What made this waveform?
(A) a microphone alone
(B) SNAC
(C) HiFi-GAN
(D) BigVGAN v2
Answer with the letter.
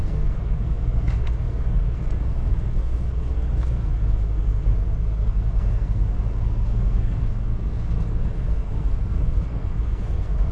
B